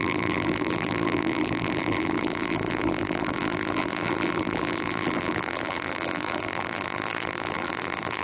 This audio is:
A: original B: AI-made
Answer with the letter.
B